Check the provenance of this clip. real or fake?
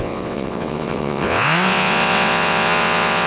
fake